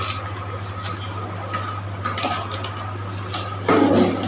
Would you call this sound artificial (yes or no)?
no